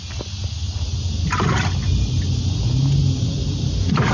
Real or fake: real